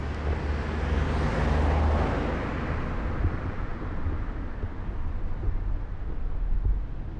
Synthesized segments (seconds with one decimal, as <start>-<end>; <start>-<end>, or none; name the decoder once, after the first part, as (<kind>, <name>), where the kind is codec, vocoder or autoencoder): none